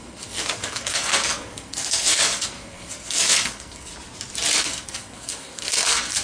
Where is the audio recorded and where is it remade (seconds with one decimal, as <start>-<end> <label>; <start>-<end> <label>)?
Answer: 0.0-3.9 remade; 3.9-4.6 recorded; 4.6-6.2 remade